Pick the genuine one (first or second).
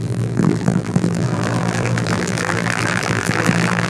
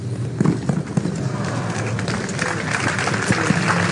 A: second